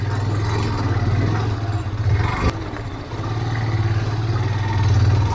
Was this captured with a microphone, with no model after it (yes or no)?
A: yes